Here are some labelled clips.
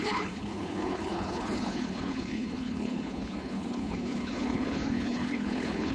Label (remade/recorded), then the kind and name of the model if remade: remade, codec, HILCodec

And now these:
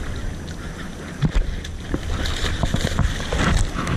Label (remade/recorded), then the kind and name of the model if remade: recorded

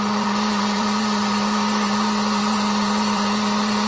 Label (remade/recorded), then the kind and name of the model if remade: remade, vocoder, BigVGAN v2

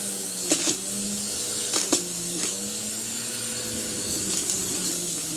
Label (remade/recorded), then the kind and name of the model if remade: remade, codec, DAC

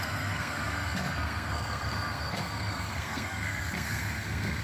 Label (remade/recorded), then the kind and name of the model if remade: remade, codec, SNAC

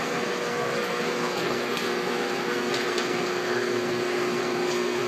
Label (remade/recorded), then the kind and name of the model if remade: remade, codec, SNAC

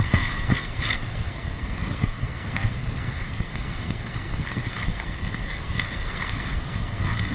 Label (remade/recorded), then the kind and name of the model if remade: remade, codec, SNAC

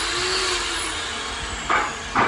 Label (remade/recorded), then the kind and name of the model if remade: recorded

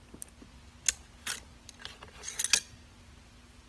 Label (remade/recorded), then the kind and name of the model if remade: recorded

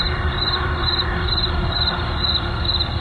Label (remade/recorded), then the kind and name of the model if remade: recorded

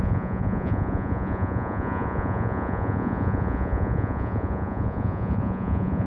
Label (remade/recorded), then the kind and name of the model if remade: remade, vocoder, Vocos